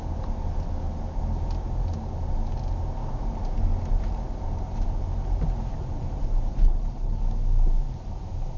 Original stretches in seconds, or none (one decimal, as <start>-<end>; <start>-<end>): 0.0-6.5; 7.2-8.6